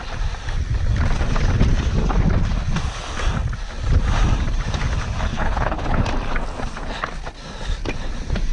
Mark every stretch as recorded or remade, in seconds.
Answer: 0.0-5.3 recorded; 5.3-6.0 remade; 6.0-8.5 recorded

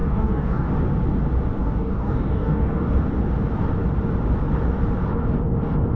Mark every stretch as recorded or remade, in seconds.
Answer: 0.0-0.7 remade; 0.7-1.6 recorded; 1.6-3.0 remade; 3.0-6.0 recorded

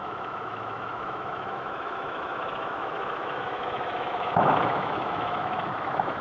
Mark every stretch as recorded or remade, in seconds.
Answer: 0.0-6.2 remade

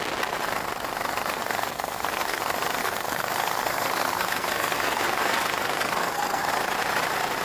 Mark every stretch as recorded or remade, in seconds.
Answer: 0.0-1.3 recorded; 1.3-2.4 remade; 2.4-2.8 recorded; 2.8-6.5 remade; 6.5-7.4 recorded

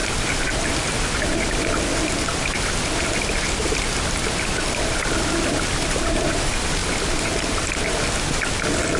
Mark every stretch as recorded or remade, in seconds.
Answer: 0.0-9.0 recorded

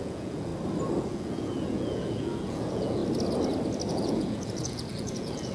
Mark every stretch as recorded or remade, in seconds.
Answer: 0.0-0.5 remade; 0.5-1.0 recorded; 1.0-3.0 remade; 3.0-3.9 recorded; 3.9-5.5 remade

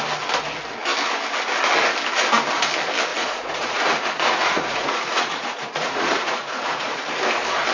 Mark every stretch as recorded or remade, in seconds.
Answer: 0.0-3.1 recorded; 3.1-7.0 remade; 7.0-7.7 recorded

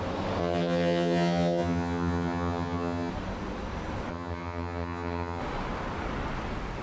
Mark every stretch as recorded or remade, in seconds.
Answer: 0.0-0.4 recorded; 0.4-3.1 remade; 3.1-4.1 recorded; 4.1-5.4 remade; 5.4-6.8 recorded